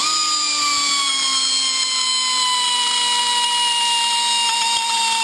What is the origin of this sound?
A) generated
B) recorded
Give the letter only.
B